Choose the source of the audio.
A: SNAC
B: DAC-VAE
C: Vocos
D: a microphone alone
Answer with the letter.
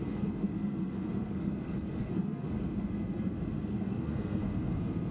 A